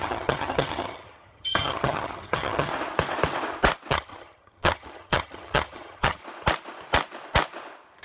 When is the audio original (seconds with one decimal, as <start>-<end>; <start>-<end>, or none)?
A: 2.7-3.9; 6.2-8.0